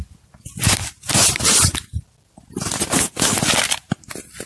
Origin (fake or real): real